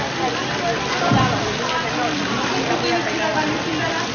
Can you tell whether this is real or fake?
real